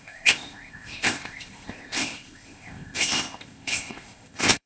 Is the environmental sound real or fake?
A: fake